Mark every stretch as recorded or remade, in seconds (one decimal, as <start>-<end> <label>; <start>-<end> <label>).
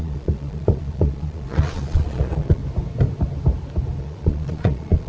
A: 0.0-2.6 remade; 2.6-4.0 recorded; 4.0-5.1 remade